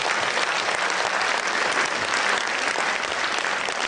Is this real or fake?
real